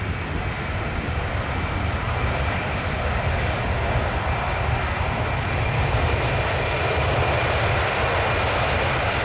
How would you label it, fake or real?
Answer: real